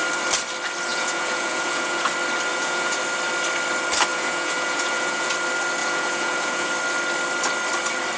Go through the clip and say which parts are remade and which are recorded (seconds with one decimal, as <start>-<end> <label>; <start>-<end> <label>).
0.0-0.9 recorded; 0.9-2.1 remade; 2.1-2.5 recorded; 2.5-3.0 remade; 3.0-4.1 recorded; 4.1-5.3 remade; 5.3-5.8 recorded; 5.8-6.7 remade; 6.7-8.2 recorded